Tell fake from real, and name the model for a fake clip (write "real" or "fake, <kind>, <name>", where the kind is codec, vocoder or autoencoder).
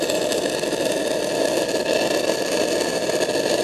real